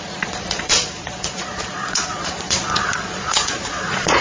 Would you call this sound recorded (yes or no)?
no